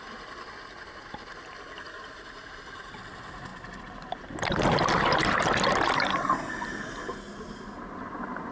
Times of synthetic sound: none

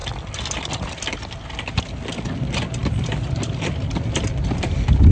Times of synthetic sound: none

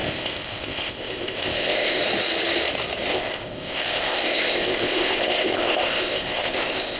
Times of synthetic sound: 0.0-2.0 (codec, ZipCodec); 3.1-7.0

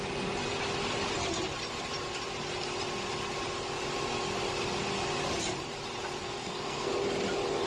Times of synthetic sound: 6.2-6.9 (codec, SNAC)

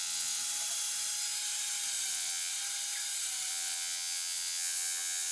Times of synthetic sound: 0.0-0.4 (vocoder, WaveNeXt); 2.1-2.5; 3.5-5.3

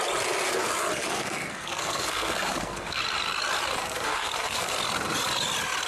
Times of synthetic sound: 1.0-3.0 (codec, SNAC); 3.8-4.7